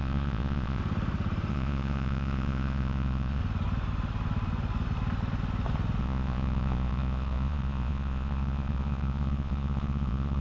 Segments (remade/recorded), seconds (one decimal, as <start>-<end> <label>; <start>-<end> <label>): 0.0-0.8 remade; 0.8-1.5 recorded; 1.5-3.4 remade; 3.4-6.0 recorded; 6.0-10.4 remade